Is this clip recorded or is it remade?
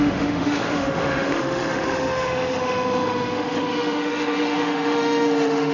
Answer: remade